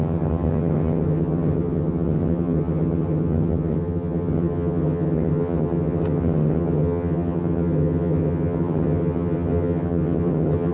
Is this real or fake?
fake